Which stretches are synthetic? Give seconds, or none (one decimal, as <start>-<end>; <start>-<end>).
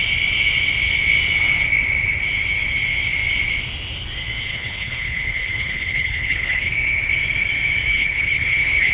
4.5-6.7; 7.9-8.9